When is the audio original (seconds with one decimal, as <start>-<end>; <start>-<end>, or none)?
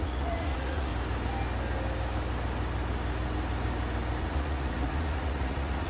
0.9-4.2